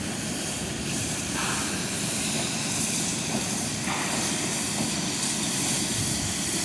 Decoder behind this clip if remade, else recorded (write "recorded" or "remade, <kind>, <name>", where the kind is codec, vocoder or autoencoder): recorded